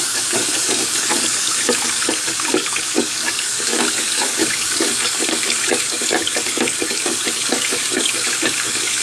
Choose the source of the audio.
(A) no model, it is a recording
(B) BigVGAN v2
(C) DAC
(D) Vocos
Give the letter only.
C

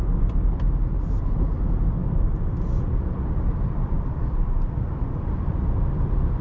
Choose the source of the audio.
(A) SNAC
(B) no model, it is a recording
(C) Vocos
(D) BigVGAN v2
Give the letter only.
D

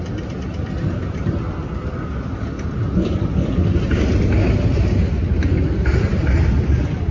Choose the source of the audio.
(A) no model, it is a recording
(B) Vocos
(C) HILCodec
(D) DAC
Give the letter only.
A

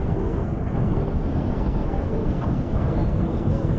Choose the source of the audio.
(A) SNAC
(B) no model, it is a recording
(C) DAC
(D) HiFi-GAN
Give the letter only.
A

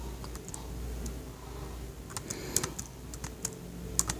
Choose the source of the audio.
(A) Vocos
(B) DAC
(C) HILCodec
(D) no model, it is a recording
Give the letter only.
D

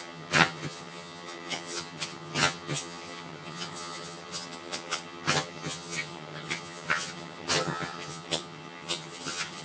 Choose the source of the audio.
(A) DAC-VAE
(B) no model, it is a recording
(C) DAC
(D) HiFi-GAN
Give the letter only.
D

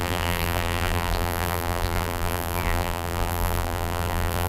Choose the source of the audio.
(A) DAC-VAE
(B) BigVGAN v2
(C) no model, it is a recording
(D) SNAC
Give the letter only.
B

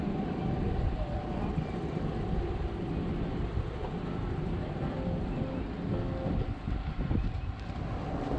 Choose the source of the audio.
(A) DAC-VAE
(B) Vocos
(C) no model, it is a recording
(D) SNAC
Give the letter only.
C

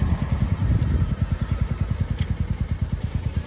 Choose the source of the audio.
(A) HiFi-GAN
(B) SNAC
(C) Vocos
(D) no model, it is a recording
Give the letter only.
D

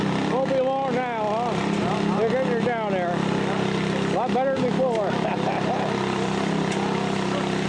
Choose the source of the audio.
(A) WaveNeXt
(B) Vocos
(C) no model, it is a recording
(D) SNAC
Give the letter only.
C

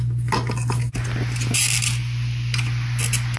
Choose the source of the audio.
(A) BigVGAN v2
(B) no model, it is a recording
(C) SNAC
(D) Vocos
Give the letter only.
B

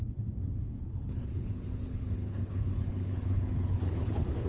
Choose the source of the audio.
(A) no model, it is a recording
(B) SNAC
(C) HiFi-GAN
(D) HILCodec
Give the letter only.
D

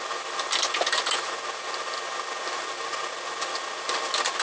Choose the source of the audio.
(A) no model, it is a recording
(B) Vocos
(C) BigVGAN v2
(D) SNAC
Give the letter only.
A